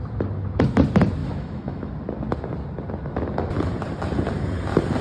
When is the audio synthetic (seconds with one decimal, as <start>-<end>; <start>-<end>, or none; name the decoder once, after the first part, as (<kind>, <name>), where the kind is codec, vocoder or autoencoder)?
1.2-1.9 (autoencoder, DAC-VAE)